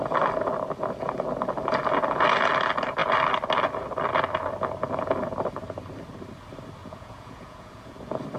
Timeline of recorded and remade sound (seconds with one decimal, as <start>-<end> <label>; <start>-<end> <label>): 0.0-6.8 recorded; 6.8-7.9 remade; 7.9-8.4 recorded